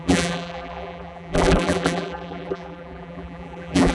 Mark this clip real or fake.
fake